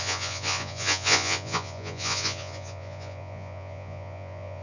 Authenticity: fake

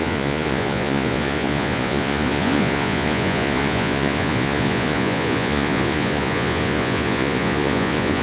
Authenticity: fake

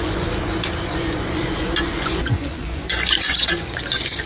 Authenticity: fake